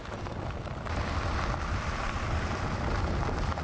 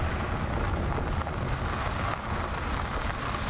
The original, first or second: second